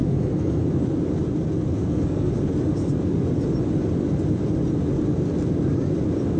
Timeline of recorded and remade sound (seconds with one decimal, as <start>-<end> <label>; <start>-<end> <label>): 0.0-0.6 remade; 0.6-1.7 recorded; 1.7-2.3 remade; 2.3-6.4 recorded